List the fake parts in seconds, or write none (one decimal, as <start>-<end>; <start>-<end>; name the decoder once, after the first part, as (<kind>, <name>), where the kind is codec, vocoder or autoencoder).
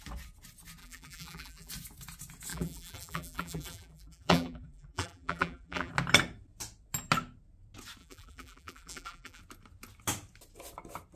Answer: 0.8-1.7 (vocoder, BigVGAN v2); 2.5-5.9; 8.0-9.4